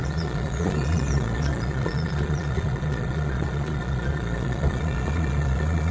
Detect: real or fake fake